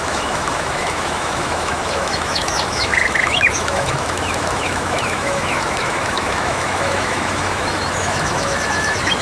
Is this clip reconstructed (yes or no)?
yes